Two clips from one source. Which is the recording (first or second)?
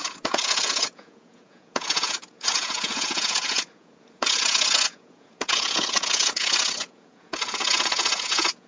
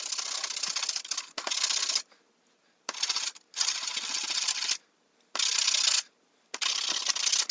second